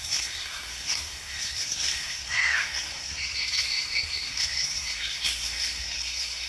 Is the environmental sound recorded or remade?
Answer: remade